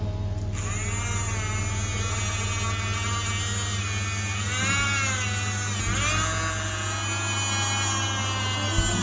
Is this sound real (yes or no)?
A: yes